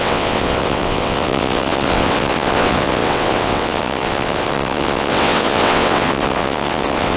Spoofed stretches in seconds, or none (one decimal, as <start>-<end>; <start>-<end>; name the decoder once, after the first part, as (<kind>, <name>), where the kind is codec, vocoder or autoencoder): 0.0-7.2 (vocoder, WaveNeXt)